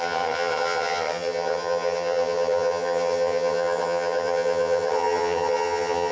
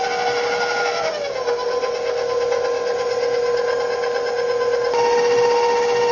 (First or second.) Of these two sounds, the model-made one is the first